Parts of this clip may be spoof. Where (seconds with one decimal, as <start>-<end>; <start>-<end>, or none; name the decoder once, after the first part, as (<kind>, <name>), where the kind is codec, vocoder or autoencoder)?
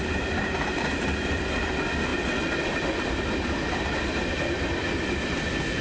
none